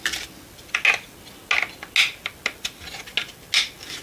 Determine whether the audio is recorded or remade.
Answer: recorded